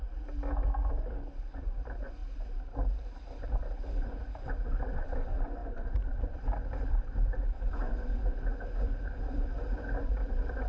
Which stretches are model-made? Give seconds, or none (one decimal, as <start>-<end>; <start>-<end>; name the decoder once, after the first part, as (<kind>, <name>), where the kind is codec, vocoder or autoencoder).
2.2-4.8 (vocoder, BigVGAN v2); 5.6-10.7